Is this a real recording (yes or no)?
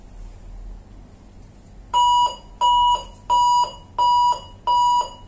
yes